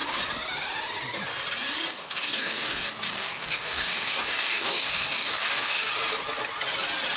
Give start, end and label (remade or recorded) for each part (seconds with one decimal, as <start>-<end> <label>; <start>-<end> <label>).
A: 0.0-1.9 recorded; 1.9-5.9 remade; 5.9-7.2 recorded